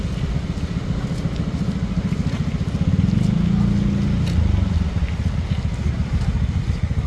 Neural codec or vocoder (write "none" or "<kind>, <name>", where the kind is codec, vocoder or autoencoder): none